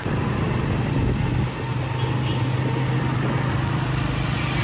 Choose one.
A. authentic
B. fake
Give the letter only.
A